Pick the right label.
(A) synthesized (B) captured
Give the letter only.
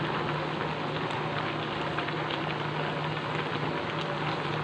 B